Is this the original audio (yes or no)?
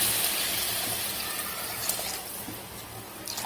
yes